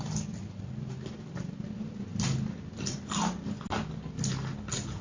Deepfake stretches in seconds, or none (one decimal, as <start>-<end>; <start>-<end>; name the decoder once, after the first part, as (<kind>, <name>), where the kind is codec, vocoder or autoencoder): none